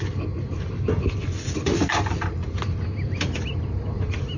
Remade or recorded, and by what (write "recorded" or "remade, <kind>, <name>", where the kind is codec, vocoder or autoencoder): recorded